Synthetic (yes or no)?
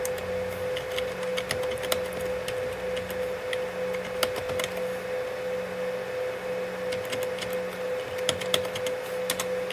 no